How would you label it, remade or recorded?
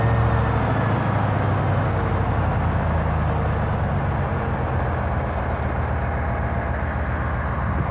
recorded